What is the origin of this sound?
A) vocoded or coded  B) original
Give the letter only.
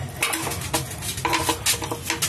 B